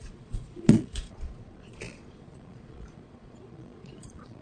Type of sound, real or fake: fake